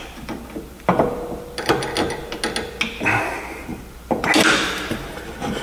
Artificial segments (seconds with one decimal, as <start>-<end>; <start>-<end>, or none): none